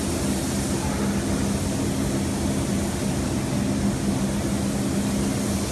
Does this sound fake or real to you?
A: real